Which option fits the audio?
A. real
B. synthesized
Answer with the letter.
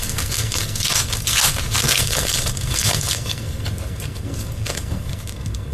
B